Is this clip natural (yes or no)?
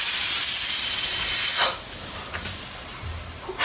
yes